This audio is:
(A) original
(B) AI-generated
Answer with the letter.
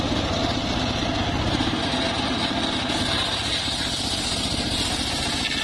A